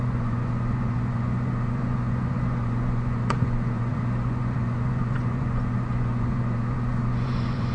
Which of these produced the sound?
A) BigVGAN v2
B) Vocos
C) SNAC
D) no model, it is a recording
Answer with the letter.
B